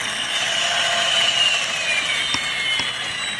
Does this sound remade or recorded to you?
recorded